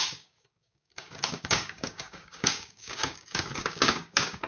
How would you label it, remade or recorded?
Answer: remade